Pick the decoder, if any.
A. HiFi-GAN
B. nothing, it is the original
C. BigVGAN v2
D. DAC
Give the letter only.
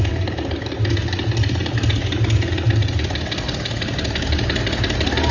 B